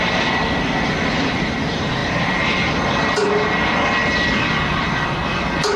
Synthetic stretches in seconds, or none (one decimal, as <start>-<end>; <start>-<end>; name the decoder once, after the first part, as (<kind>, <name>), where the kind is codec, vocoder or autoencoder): 0.0-5.8 (vocoder, BigVGAN v2)